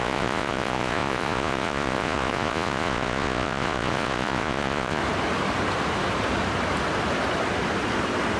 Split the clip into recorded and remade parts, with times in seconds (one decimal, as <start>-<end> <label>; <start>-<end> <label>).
0.0-5.0 remade; 5.0-8.4 recorded